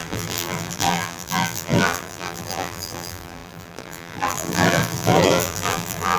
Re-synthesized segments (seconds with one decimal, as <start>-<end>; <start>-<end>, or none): 0.0-6.2

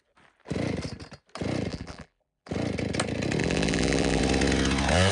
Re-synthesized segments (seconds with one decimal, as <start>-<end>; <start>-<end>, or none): 1.7-2.5; 3.4-4.2

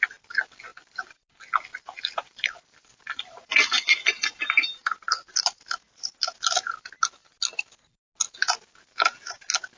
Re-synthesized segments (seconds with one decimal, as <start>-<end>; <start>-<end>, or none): 0.7-3.2